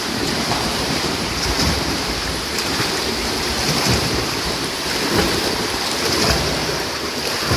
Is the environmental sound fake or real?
fake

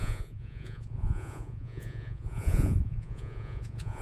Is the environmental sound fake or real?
fake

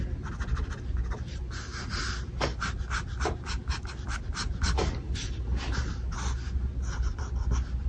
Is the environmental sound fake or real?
real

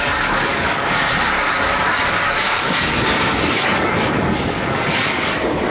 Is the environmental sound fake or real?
fake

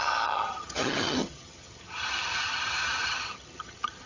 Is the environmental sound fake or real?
fake